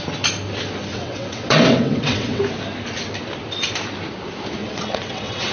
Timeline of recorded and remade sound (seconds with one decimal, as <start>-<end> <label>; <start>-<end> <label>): 0.0-0.9 recorded; 0.9-2.4 remade; 2.4-4.6 recorded; 4.6-5.5 remade